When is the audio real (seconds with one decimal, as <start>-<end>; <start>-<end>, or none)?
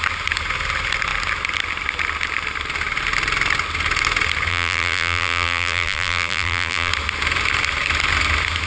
0.0-4.5; 6.9-8.7